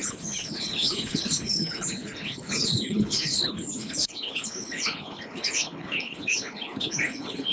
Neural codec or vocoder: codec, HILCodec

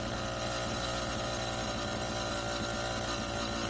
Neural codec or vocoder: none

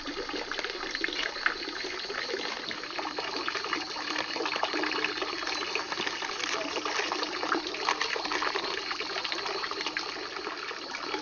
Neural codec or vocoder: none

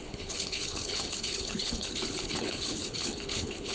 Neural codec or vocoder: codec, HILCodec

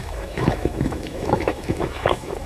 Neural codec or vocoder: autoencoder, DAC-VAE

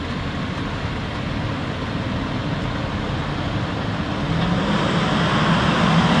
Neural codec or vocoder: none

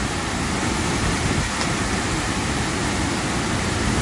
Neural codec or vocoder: none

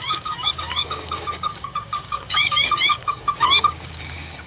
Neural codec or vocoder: codec, DAC